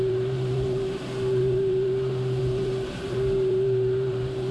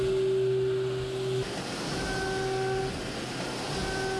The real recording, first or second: second